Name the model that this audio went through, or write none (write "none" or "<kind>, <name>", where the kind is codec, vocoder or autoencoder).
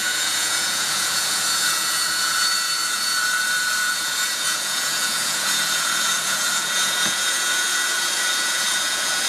vocoder, Vocos